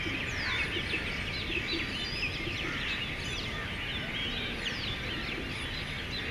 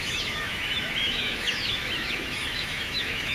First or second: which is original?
first